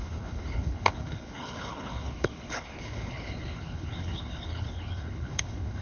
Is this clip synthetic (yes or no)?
yes